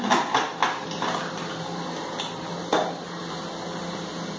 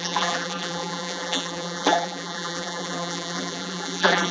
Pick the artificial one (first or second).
second